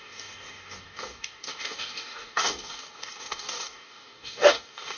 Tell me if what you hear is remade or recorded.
remade